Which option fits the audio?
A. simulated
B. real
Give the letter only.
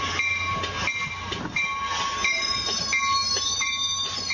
B